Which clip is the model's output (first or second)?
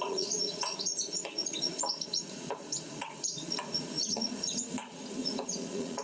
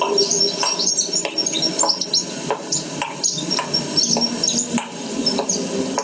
first